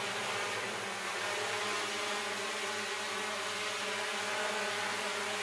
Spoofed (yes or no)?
no